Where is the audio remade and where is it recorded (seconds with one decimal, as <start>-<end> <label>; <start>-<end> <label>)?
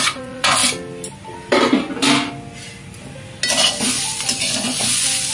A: 0.0-0.6 remade; 0.6-3.8 recorded; 3.8-5.3 remade